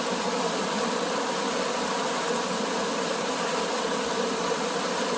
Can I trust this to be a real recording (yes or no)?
yes